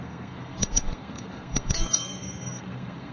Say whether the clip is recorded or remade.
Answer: remade